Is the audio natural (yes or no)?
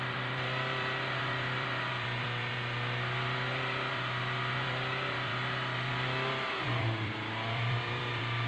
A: no